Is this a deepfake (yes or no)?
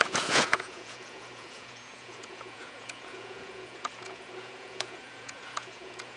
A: yes